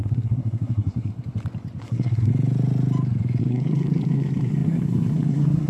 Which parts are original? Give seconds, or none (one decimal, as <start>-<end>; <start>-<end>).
1.1-1.8; 2.3-3.4

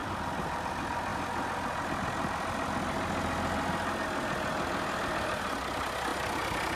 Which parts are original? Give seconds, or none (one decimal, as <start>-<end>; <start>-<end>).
0.7-6.8

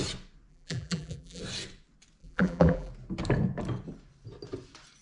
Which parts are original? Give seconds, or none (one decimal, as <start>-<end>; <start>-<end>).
0.0-0.5; 1.4-2.2; 2.9-5.0

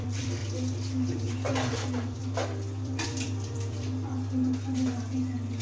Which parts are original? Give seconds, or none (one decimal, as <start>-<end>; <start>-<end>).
0.4-1.7; 4.1-5.6

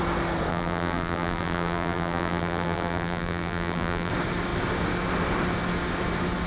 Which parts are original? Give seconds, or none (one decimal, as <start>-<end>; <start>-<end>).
0.0-0.5; 4.1-6.5

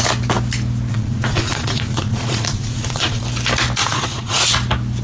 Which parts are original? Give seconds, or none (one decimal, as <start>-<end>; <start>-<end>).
0.0-0.9; 3.2-3.8; 4.4-5.0

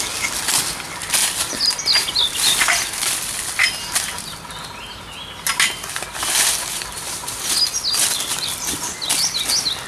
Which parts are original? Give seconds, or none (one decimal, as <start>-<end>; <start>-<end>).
0.0-9.9

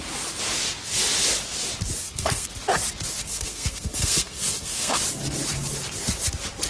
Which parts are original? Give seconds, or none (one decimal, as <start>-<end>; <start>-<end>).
0.0-2.0; 2.5-3.2; 5.0-6.7